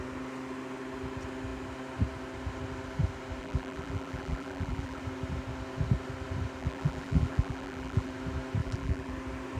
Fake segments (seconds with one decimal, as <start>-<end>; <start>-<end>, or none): 3.4-5.0; 6.6-8.1; 8.6-9.1